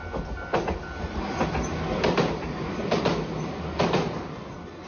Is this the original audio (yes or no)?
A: yes